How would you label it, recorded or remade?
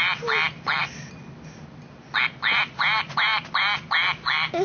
recorded